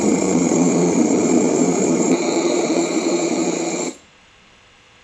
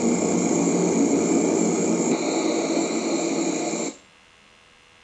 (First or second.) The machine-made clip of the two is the first